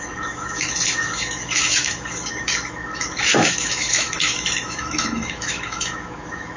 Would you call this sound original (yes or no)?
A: no